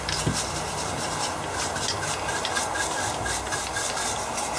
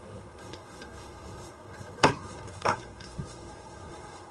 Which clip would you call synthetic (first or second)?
second